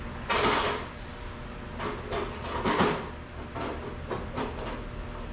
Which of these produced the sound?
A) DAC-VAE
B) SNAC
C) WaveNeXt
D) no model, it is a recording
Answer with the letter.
D